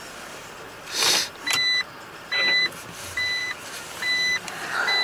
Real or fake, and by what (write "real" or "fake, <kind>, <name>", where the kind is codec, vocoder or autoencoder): fake, vocoder, BigVGAN v2